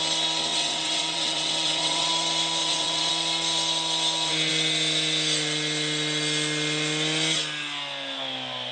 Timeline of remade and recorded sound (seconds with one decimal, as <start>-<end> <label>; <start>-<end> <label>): 0.0-0.5 recorded; 0.5-2.1 remade; 2.1-2.6 recorded; 2.6-3.1 remade; 3.1-8.7 recorded